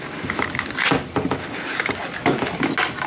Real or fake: real